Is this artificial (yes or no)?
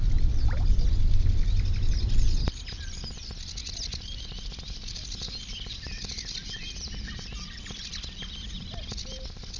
no